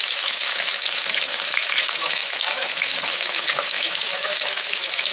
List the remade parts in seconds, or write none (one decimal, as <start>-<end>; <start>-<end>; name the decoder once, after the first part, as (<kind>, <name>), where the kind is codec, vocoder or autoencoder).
0.0-5.1 (autoencoder, DAC-VAE)